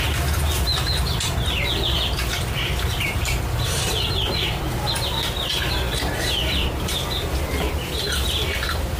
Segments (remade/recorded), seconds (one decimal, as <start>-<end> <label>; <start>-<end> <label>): 0.0-0.7 recorded; 0.7-4.7 remade; 4.7-9.0 recorded